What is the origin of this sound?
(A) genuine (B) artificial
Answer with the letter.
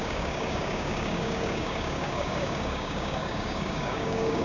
B